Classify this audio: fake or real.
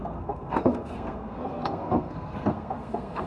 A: fake